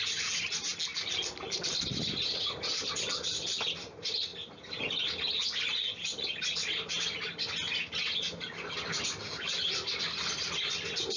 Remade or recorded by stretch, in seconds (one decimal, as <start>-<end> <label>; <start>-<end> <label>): 0.0-11.2 recorded